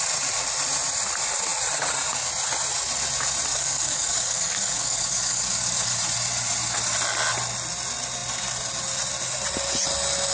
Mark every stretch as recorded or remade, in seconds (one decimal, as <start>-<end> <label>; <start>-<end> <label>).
0.0-3.5 recorded; 3.5-6.0 remade; 6.0-10.3 recorded

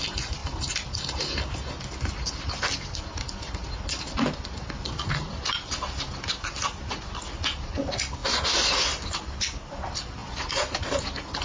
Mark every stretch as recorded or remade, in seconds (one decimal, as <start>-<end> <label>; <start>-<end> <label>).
0.0-11.4 recorded

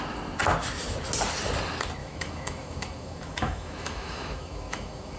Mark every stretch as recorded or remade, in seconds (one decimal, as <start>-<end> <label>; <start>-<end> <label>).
0.0-2.0 recorded; 2.0-5.2 remade

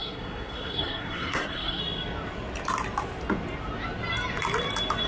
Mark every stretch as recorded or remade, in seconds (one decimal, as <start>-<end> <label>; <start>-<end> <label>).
0.0-1.8 remade; 1.8-5.1 recorded